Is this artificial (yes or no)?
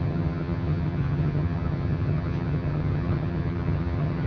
yes